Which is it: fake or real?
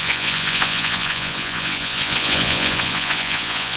fake